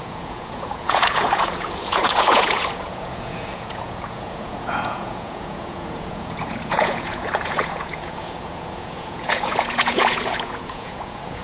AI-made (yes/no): yes